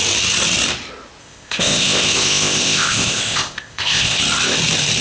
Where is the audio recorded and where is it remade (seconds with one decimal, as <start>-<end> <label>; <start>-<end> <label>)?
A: 0.0-1.2 recorded; 1.2-4.2 remade; 4.2-5.0 recorded